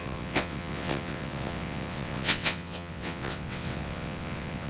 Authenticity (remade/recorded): remade